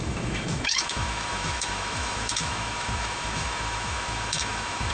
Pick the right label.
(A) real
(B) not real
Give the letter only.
B